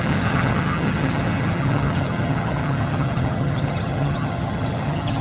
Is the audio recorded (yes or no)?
no